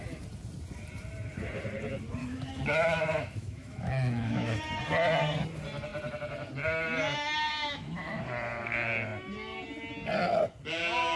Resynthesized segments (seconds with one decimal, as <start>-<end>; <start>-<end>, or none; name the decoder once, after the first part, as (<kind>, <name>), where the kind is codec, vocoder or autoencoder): 2.2-4.6 (autoencoder, DAC-VAE); 7.6-8.2